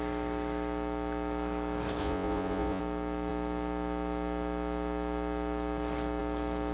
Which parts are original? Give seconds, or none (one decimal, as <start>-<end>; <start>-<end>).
0.0-2.0; 2.8-6.7